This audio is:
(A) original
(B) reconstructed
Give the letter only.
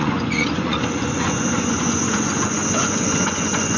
B